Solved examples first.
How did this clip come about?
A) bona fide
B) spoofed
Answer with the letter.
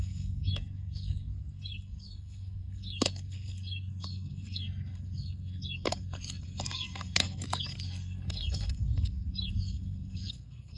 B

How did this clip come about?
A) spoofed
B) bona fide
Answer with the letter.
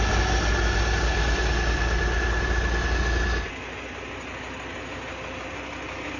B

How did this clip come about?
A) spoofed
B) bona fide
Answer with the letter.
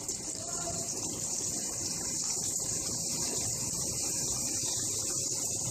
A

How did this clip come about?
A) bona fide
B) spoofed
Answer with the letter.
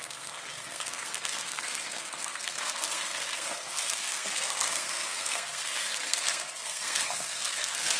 B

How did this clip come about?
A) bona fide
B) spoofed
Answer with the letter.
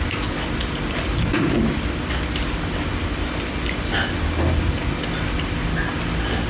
A